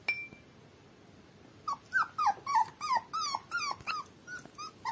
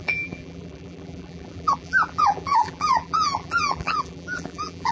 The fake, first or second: second